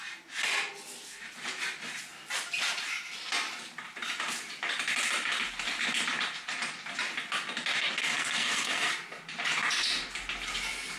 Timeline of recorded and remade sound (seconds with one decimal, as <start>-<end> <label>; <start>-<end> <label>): 0.0-8.0 recorded; 8.0-8.9 remade; 8.9-11.0 recorded